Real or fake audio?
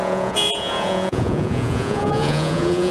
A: fake